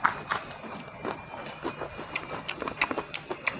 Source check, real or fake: real